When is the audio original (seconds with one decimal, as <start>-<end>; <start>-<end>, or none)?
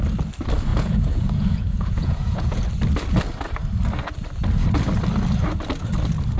0.0-0.7; 2.6-6.4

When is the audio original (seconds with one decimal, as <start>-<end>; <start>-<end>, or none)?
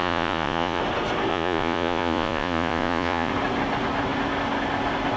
0.8-1.3; 3.3-5.2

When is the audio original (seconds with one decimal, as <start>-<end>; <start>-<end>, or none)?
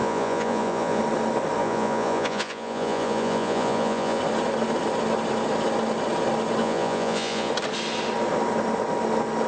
1.0-1.6; 4.2-6.6; 7.5-9.5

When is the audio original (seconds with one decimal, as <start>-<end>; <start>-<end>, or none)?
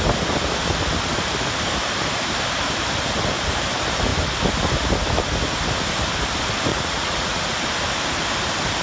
0.0-6.7; 7.4-8.8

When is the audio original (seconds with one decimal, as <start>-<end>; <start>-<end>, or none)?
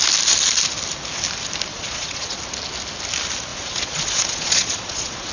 0.0-1.7; 2.4-3.5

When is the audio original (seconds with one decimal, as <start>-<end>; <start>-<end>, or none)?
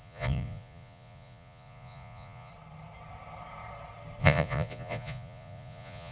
2.5-4.2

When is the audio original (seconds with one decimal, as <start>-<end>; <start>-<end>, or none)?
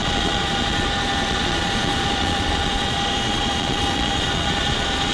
none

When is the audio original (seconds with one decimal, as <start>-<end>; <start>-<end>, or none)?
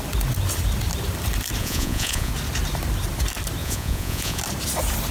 0.0-1.6; 2.3-3.6; 4.4-5.1